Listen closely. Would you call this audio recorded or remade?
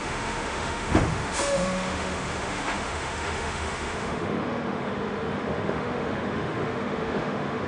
remade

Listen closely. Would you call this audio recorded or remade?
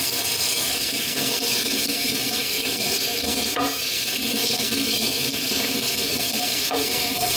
remade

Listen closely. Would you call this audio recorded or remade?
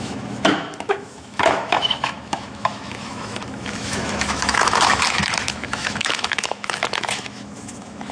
remade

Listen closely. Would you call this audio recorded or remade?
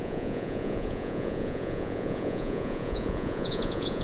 remade